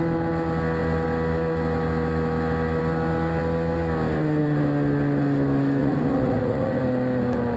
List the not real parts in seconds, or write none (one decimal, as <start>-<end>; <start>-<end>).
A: 5.8-6.8